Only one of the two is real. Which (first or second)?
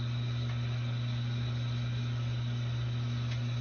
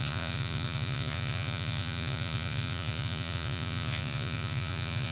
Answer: first